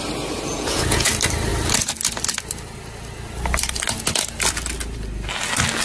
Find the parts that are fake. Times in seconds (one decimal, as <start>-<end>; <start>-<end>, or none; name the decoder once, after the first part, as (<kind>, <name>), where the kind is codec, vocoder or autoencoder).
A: 0.5-1.1 (vocoder, Vocos)